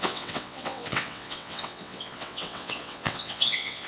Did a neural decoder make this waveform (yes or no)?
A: yes